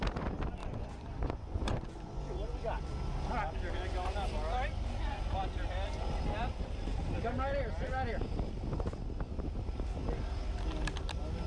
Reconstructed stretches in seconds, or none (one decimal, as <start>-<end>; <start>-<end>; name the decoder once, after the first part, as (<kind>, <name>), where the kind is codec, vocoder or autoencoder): 0.6-2.2 (vocoder, Vocos)